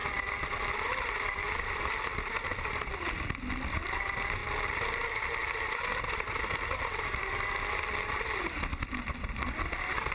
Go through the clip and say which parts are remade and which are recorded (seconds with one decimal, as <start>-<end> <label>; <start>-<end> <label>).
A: 0.0-3.7 remade; 3.7-4.4 recorded; 4.4-8.8 remade; 8.8-10.1 recorded